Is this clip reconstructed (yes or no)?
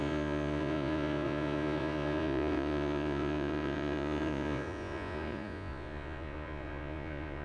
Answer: yes